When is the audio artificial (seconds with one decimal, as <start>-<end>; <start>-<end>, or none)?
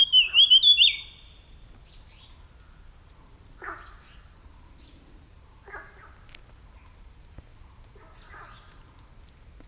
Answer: none